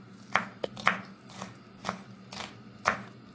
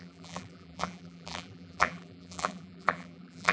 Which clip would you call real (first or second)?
first